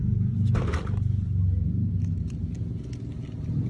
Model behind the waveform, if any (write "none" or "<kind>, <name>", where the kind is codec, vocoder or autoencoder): none